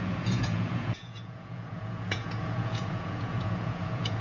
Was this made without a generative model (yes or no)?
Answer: no